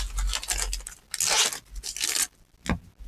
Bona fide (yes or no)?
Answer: yes